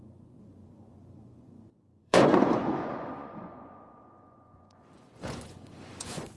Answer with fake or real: fake